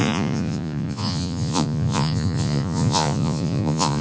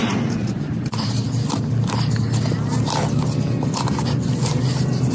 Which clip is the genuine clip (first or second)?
second